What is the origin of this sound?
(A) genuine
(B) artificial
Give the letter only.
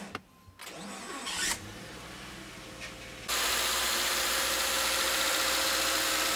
A